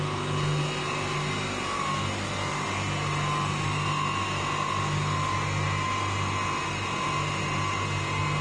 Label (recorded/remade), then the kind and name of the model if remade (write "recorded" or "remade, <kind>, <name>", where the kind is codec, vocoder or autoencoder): recorded